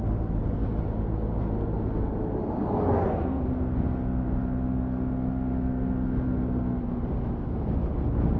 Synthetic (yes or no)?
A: no